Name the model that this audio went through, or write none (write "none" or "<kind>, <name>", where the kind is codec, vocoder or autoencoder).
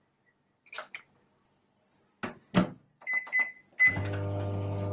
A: none